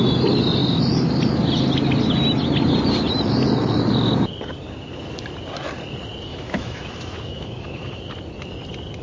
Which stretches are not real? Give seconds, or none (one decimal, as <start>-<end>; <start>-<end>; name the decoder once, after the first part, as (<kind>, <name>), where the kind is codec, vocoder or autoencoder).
6.3-8.0 (autoencoder, DAC-VAE)